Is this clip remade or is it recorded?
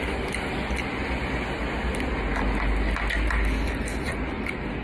recorded